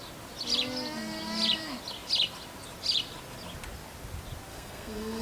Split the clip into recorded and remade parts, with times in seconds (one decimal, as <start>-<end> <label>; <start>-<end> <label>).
0.0-4.5 recorded; 4.5-5.2 remade